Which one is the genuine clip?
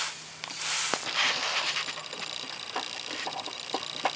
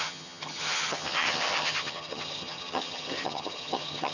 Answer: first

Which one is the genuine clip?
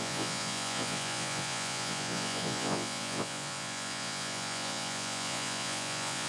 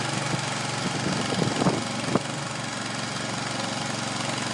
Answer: second